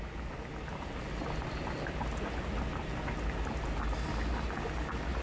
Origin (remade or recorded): recorded